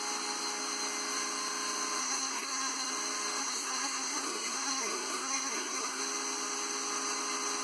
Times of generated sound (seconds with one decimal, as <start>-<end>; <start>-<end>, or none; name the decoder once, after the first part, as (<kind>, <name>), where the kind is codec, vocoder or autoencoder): 2.0-2.9 (codec, SNAC); 3.4-6.0